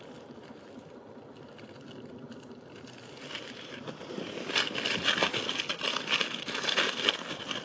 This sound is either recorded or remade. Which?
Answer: recorded